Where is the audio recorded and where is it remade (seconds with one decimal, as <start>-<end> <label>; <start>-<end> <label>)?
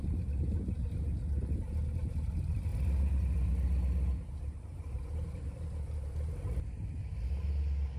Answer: 0.0-8.0 recorded